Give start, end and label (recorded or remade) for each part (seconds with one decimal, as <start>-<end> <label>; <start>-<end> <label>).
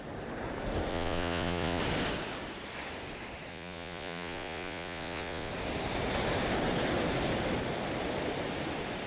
0.0-0.9 recorded; 0.9-1.8 remade; 1.8-3.5 recorded; 3.5-5.5 remade; 5.5-9.1 recorded